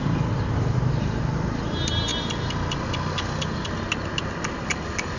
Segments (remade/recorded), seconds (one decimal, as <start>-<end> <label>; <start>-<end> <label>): 0.0-2.1 remade; 2.1-5.2 recorded